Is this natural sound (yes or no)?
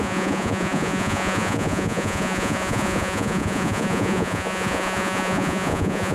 no